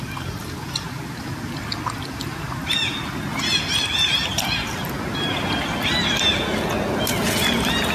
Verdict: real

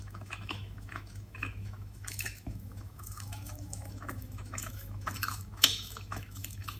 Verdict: fake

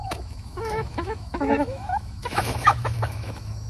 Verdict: fake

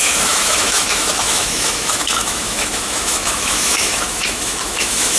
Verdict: fake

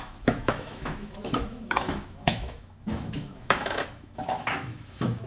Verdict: fake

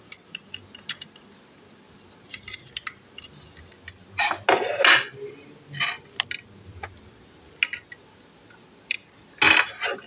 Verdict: real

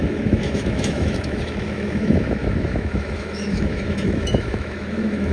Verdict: fake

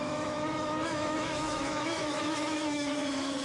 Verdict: fake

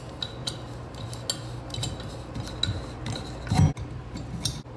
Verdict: real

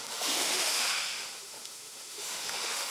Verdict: fake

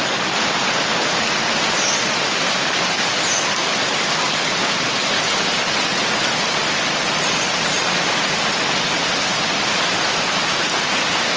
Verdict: real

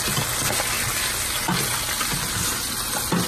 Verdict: real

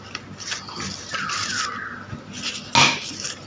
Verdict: real